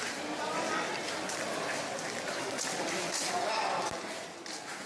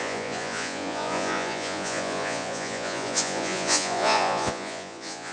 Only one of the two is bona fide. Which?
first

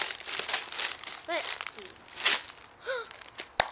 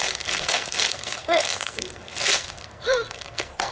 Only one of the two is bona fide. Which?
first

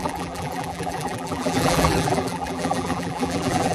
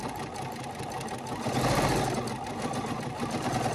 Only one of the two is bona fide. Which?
second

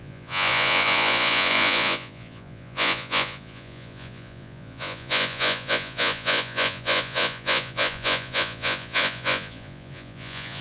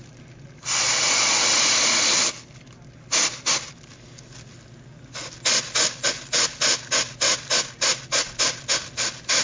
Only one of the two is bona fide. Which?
second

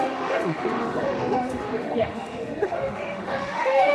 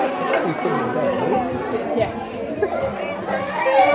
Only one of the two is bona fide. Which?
second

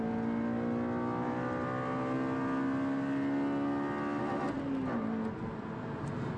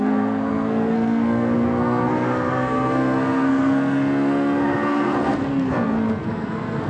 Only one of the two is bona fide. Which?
first